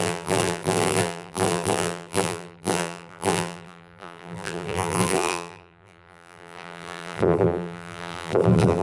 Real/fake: fake